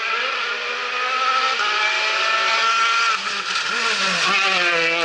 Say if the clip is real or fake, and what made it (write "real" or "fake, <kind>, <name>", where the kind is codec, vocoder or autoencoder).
real